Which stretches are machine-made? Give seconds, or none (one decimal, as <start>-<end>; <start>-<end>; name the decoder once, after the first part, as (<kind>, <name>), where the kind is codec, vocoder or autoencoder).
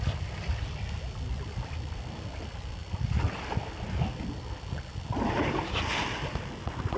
none